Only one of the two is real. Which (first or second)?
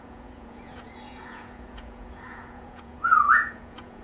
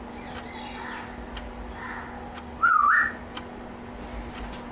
second